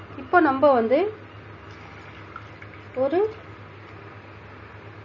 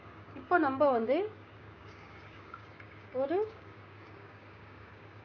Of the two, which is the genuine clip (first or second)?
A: first